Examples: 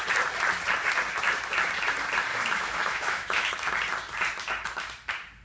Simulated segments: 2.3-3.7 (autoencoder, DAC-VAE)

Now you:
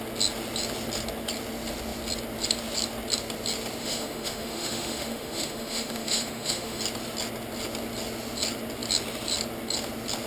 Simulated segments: 3.8-6.8 (autoencoder, DAC-VAE)

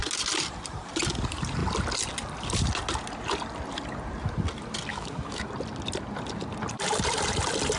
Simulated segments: 4.9-5.5 (autoencoder, DAC-VAE)

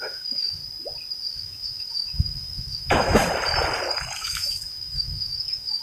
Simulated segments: 0.0-0.6 (autoencoder, DAC-VAE); 1.3-3.2; 4.2-5.8

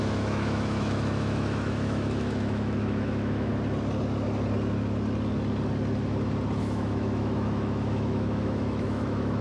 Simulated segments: 0.0-3.5 (autoencoder, DAC-VAE); 6.6-9.4